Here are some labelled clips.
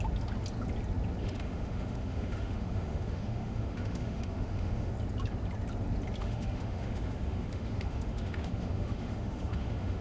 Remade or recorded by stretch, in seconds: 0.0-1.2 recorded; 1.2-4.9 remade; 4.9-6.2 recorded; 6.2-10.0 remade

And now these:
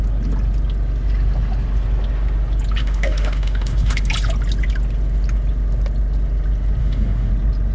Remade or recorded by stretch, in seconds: 0.0-2.8 recorded; 2.8-4.1 remade; 4.1-6.8 recorded; 6.8-7.3 remade; 7.3-7.7 recorded

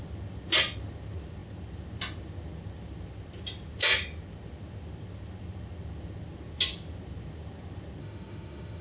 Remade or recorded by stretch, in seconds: 0.0-8.0 recorded; 8.0-8.8 remade